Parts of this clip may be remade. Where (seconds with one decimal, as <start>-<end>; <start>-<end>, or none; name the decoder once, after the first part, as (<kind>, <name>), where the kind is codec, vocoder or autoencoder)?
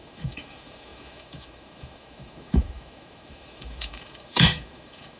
0.0-5.2 (autoencoder, DAC-VAE)